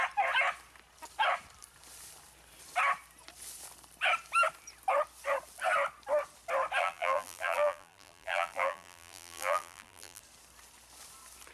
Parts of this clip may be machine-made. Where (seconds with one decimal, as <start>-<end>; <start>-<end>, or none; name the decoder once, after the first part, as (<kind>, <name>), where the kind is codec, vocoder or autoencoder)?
6.8-10.2 (vocoder, BigVGAN v2)